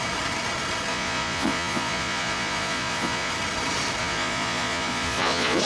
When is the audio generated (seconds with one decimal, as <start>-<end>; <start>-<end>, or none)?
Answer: 0.9-3.3; 4.0-5.6